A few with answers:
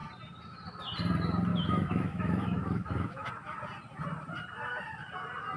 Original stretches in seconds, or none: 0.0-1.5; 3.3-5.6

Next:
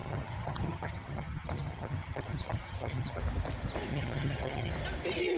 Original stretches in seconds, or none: 3.2-3.9; 4.7-5.4